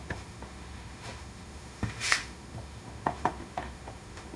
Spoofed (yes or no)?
yes